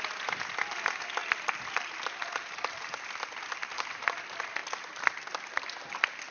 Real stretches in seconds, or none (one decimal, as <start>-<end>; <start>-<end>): 0.0-6.3